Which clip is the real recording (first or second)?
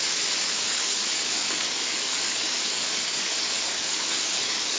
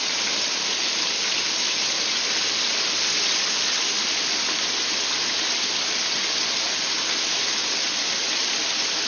second